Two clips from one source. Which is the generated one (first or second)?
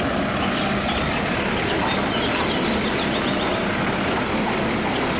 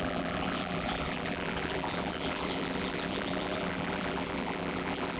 second